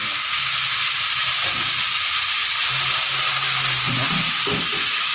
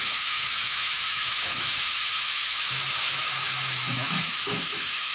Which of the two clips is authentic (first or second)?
first